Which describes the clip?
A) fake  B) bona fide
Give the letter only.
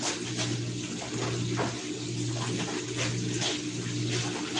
B